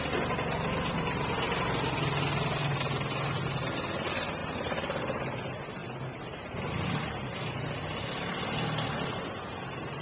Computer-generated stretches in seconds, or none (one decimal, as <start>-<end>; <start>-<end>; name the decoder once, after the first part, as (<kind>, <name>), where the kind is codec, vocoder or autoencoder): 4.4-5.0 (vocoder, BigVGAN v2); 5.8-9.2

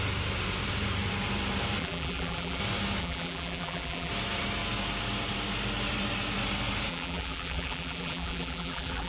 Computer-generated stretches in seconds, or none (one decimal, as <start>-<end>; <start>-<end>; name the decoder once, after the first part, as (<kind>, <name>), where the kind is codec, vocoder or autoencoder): 1.8-2.6 (vocoder, BigVGAN v2); 3.0-4.1; 6.9-9.1

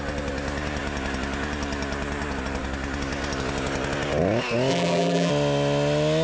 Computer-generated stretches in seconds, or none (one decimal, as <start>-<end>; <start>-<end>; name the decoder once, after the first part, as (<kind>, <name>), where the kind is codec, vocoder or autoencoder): 4.7-5.3 (vocoder, BigVGAN v2)

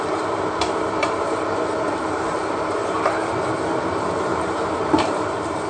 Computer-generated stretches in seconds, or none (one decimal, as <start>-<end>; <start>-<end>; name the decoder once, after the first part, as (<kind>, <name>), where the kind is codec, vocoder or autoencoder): 0.0-5.7 (vocoder, BigVGAN v2)

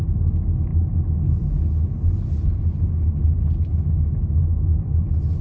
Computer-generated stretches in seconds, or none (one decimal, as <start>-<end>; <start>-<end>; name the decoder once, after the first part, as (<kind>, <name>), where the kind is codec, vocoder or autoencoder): none

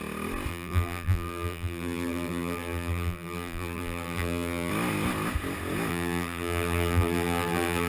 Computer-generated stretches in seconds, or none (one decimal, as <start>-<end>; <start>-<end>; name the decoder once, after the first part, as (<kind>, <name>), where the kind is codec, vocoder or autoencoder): 0.5-4.7 (vocoder, BigVGAN v2); 5.9-7.9

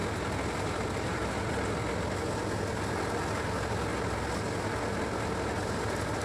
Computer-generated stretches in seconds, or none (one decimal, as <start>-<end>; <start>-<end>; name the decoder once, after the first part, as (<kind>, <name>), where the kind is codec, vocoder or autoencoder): 0.0-1.3 (vocoder, BigVGAN v2)

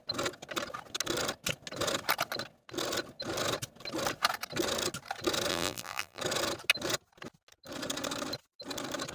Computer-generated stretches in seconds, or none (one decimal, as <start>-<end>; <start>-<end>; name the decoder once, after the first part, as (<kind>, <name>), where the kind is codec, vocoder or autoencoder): 5.5-6.2 (vocoder, BigVGAN v2)